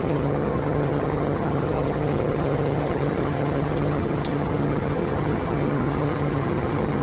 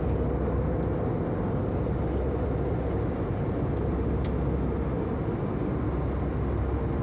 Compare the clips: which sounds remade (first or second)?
first